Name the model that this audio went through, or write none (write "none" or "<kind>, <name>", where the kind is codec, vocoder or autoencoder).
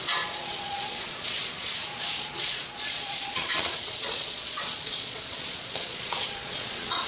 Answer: vocoder, Vocos